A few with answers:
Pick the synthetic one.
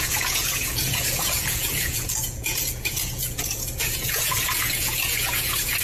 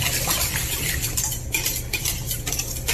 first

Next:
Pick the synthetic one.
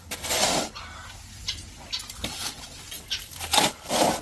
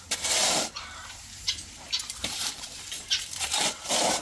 second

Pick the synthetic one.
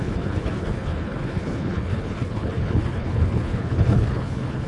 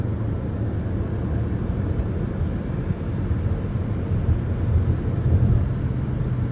first